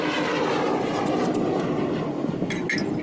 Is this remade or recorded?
recorded